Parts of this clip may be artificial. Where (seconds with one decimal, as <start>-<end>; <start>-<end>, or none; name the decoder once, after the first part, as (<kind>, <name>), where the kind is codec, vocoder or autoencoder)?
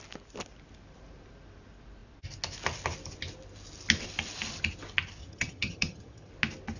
5.2-6.3 (vocoder, HiFi-GAN)